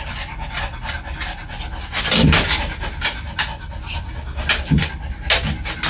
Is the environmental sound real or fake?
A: real